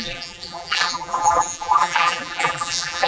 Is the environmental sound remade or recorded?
remade